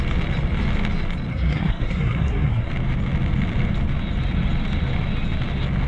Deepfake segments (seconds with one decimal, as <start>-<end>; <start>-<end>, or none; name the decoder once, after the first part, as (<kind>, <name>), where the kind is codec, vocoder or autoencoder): 1.3-2.7 (codec, SNAC)